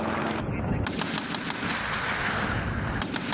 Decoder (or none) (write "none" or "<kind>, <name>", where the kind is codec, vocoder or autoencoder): none